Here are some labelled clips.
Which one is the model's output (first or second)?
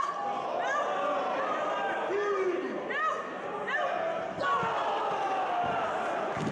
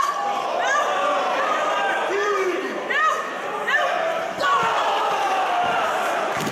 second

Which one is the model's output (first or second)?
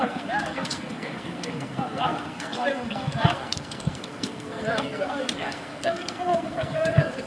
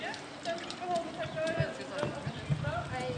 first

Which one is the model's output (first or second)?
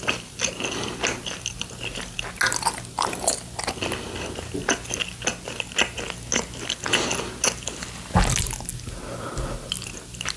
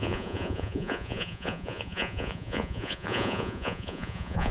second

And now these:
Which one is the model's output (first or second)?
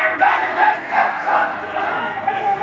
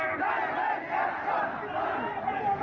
first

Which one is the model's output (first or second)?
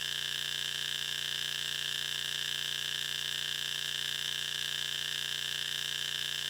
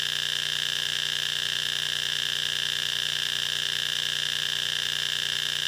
first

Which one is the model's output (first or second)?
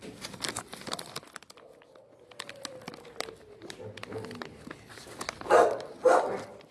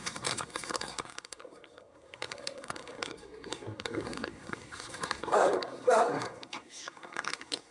second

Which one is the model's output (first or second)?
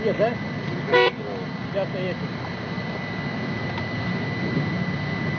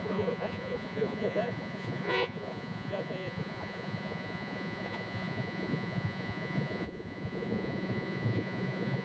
second